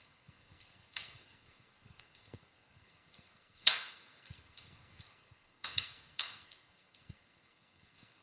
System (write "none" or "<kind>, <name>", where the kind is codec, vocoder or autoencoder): codec, SNAC